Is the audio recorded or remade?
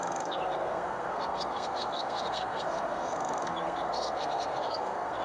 remade